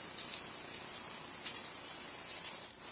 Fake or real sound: real